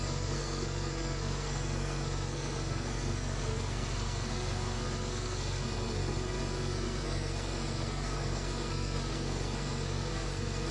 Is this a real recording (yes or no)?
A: no